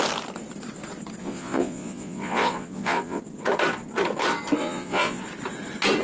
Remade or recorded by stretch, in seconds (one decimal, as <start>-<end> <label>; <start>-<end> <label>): 0.0-1.2 recorded; 1.2-3.2 remade; 3.2-4.6 recorded; 4.6-5.2 remade; 5.2-6.0 recorded